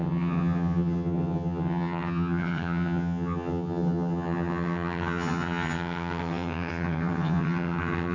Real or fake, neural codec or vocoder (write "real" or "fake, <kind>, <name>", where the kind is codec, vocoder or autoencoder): fake, vocoder, HiFi-GAN